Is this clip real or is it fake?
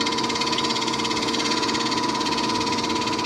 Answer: fake